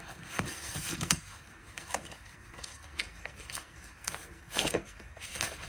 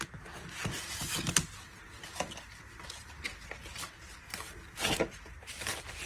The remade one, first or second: first